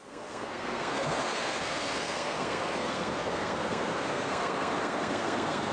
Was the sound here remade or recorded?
remade